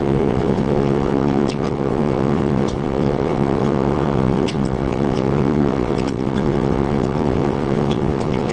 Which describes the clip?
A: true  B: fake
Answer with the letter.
B